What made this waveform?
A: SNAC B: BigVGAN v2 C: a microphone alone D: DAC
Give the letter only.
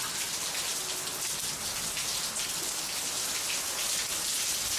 C